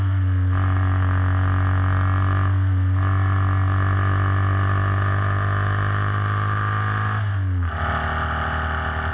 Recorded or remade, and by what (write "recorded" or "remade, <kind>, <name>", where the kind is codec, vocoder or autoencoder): recorded